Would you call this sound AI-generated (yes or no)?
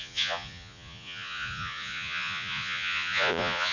yes